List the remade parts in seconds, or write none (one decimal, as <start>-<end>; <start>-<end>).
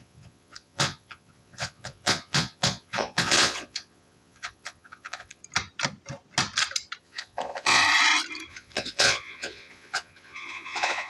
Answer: 0.0-5.4; 7.0-7.8; 8.5-11.1